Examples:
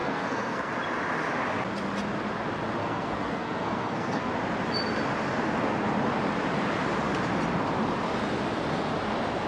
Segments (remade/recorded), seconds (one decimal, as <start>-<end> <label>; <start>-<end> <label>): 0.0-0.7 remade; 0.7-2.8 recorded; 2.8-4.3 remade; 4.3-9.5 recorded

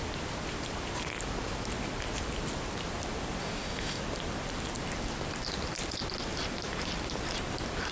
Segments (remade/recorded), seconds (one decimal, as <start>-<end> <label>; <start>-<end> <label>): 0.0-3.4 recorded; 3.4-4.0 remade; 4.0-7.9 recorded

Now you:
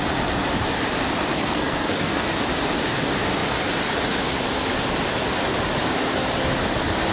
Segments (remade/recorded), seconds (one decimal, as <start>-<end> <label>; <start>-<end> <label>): 0.0-1.3 recorded; 1.3-2.2 remade; 2.2-7.1 recorded

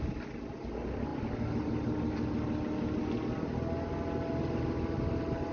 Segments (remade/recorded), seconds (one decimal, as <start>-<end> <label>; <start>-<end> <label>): 0.0-5.5 recorded

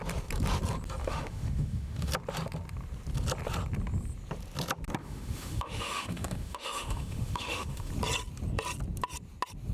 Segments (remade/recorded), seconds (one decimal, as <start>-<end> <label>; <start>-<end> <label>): 0.0-1.0 recorded; 1.0-2.1 remade; 2.1-5.0 recorded; 5.0-7.9 remade; 7.9-9.7 recorded

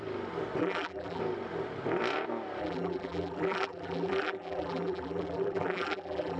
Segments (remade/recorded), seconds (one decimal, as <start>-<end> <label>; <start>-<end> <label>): 0.0-0.6 recorded; 0.6-1.2 remade; 1.2-2.6 recorded; 2.6-6.4 remade

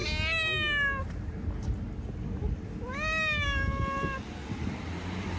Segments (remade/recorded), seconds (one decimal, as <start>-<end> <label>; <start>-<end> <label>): 0.0-5.4 recorded

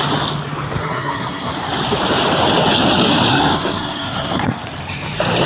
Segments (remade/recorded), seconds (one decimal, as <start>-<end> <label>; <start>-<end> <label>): 0.0-0.8 recorded; 0.8-1.5 remade; 1.5-3.3 recorded; 3.3-4.6 remade; 4.6-5.5 recorded